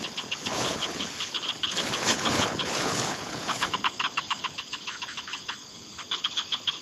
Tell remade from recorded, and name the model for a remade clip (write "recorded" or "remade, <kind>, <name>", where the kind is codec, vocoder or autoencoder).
remade, codec, HILCodec